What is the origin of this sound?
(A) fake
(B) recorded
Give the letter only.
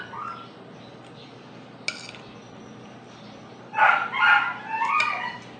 B